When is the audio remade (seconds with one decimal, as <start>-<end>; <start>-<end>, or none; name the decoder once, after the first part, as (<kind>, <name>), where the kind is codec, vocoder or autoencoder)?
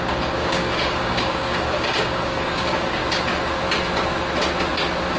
0.0-3.0 (codec, DAC)